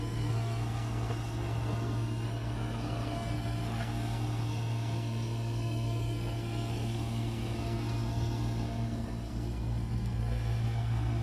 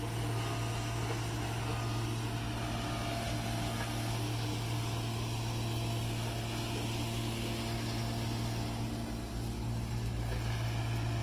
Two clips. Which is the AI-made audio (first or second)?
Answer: first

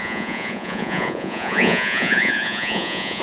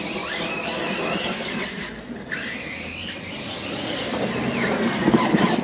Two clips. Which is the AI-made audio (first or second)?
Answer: first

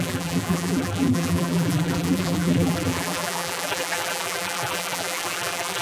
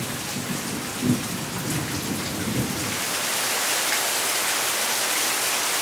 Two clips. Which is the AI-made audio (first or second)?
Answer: first